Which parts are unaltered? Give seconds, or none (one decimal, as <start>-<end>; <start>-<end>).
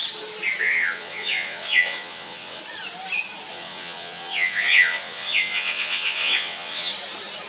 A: 0.0-0.6; 2.6-3.5; 6.9-7.5